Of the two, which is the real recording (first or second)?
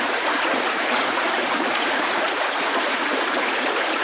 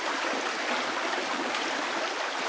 second